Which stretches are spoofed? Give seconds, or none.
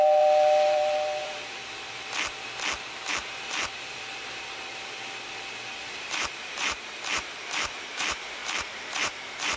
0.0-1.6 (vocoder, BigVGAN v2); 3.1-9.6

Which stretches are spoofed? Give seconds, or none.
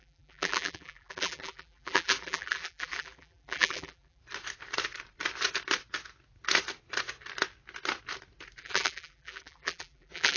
0.0-4.2 (vocoder, BigVGAN v2); 8.6-10.4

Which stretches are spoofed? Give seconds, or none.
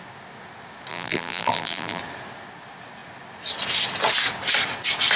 0.9-2.0 (vocoder, BigVGAN v2)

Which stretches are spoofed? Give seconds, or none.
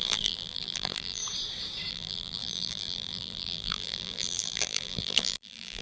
0.0-1.2 (vocoder, BigVGAN v2); 1.9-5.8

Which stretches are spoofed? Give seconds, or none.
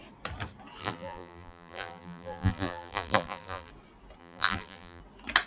0.8-3.7 (vocoder, BigVGAN v2); 4.2-5.0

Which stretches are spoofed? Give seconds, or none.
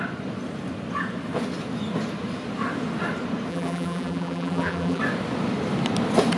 3.5-5.0 (vocoder, BigVGAN v2)